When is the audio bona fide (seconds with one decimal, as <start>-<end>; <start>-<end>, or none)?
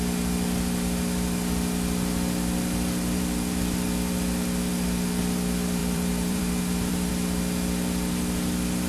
0.0-5.8; 7.1-8.9